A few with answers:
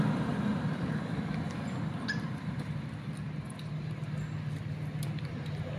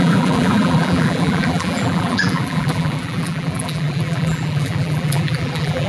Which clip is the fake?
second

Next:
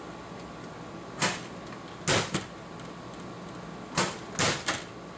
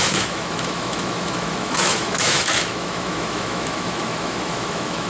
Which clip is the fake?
second